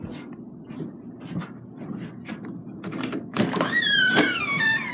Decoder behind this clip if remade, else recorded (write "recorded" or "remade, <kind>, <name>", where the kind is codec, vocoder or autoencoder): recorded